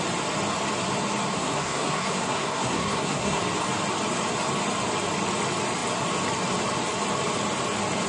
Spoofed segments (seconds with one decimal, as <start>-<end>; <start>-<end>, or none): 1.3-3.4